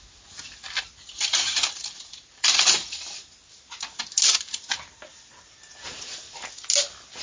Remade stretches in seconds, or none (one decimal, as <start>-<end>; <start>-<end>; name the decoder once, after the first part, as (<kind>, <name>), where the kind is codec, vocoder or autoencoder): 1.3-3.2 (vocoder, BigVGAN v2)